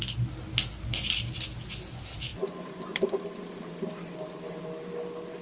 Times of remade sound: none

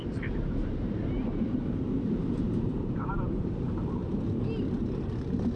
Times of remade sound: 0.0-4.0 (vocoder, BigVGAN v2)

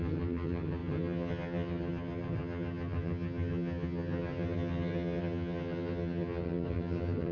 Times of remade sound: 0.0-7.3 (vocoder, HiFi-GAN)

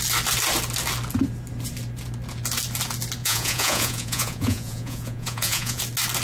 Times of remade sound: 3.2-5.8 (vocoder, Vocos)

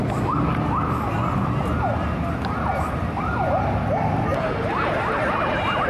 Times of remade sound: none